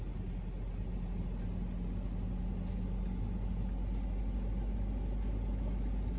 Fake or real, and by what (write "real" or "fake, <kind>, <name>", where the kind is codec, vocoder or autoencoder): real